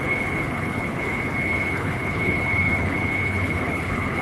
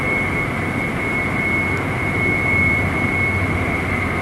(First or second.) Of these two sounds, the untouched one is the second